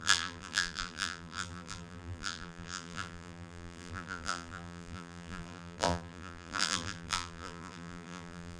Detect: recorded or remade remade